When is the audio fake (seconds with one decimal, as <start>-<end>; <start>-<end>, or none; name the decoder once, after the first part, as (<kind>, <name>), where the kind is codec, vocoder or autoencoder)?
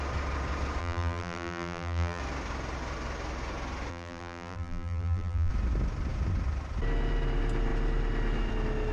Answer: 0.8-2.2 (vocoder, BigVGAN v2); 3.9-5.5